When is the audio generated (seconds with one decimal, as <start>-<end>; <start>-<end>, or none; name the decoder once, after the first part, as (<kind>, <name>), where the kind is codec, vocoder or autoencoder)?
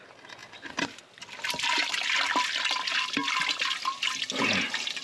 none